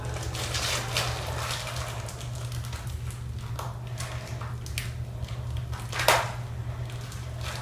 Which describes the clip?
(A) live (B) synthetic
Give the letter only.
A